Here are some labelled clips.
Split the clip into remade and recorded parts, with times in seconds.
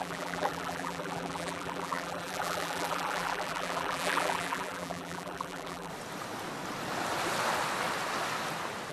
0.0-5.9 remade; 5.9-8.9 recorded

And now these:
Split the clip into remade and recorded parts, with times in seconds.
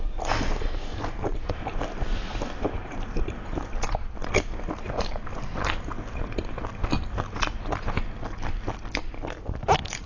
0.0-0.9 recorded; 0.9-3.9 remade; 3.9-10.1 recorded